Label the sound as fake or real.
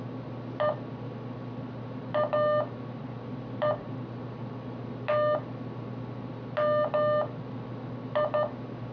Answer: real